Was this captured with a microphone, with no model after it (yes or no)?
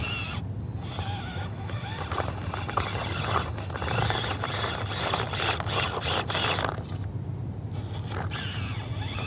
yes